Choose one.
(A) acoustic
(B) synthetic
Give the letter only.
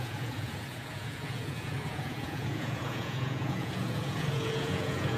B